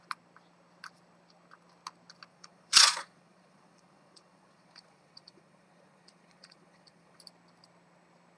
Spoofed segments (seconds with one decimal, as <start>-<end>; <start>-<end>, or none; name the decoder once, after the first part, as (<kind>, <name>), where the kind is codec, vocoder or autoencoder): 2.3-7.2 (vocoder, Vocos)